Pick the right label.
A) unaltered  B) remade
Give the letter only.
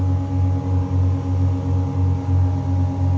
A